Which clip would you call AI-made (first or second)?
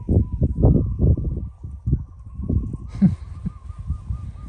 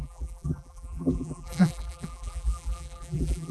second